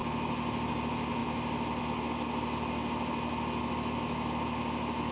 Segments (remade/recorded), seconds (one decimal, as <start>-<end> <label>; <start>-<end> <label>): 0.0-5.1 recorded